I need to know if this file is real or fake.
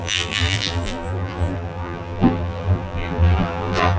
fake